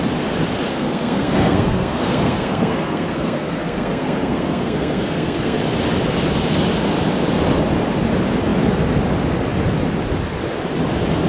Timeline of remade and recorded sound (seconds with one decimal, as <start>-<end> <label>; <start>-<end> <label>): 0.0-0.7 recorded; 0.7-5.6 remade; 5.6-11.3 recorded